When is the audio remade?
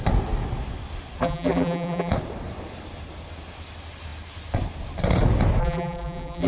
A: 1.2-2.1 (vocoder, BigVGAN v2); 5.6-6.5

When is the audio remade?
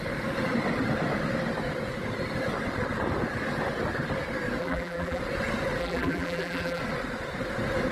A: 4.6-5.2 (vocoder, BigVGAN v2); 5.8-6.8